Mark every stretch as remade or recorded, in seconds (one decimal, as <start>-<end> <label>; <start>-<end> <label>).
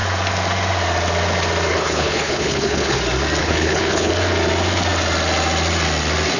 0.0-1.7 recorded; 1.7-3.0 remade; 3.0-3.4 recorded; 3.4-4.1 remade; 4.1-6.4 recorded